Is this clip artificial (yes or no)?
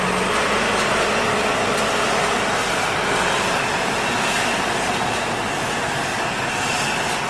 no